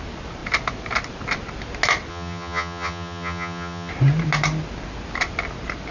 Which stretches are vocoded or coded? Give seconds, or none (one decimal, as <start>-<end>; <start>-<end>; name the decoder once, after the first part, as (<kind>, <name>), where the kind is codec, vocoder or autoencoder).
2.1-3.9 (vocoder, HiFi-GAN)